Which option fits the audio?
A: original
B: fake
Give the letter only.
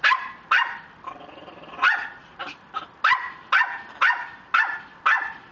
A